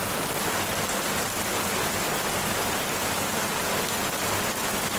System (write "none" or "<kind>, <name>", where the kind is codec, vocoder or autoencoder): none